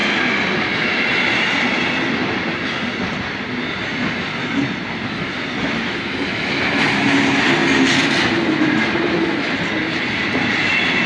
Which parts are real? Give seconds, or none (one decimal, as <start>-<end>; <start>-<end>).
0.0-11.1